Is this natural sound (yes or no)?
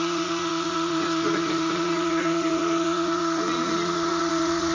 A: no